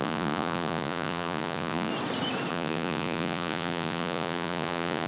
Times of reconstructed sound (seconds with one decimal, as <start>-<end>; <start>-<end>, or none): 0.0-1.9; 2.5-5.1